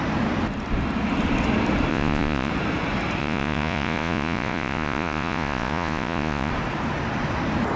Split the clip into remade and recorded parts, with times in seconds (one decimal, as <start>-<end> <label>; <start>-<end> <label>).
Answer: 0.0-1.9 recorded; 1.9-2.5 remade; 2.5-3.2 recorded; 3.2-6.5 remade; 6.5-7.8 recorded